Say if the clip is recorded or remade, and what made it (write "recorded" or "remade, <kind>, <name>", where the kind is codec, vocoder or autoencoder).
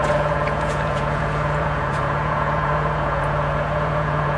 remade, vocoder, Vocos